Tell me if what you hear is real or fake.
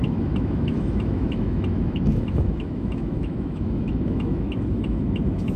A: fake